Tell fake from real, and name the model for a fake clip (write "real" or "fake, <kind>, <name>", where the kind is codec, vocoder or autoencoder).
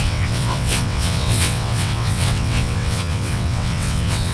fake, vocoder, WaveNeXt